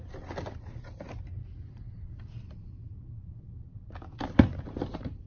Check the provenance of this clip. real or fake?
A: real